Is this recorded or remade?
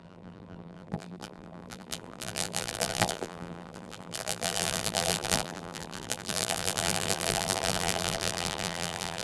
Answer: remade